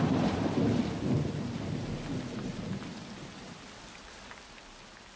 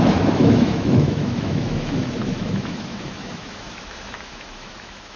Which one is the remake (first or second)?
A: second